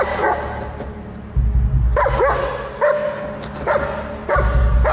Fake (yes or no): no